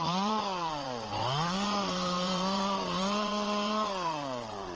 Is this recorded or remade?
remade